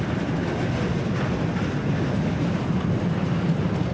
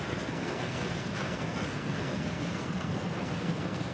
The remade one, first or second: second